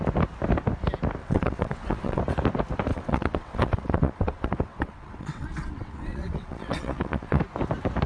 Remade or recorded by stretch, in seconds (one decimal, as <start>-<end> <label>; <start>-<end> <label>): 0.0-1.2 recorded; 1.2-2.2 remade; 2.2-2.9 recorded; 2.9-7.4 remade; 7.4-8.1 recorded